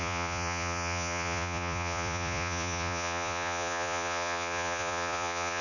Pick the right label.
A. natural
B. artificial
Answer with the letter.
B